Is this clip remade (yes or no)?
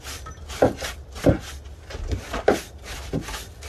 no